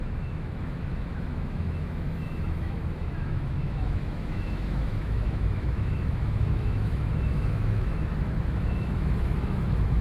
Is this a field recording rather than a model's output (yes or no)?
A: no